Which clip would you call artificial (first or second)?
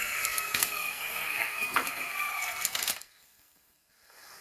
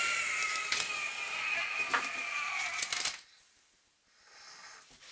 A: first